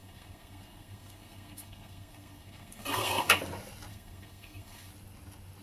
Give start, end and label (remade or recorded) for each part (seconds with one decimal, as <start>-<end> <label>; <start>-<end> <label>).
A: 0.0-3.4 remade; 3.4-3.9 recorded; 3.9-4.9 remade; 4.9-5.6 recorded